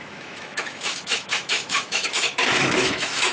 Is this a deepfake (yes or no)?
yes